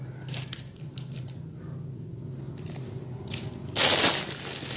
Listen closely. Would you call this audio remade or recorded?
recorded